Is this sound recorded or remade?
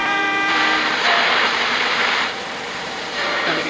remade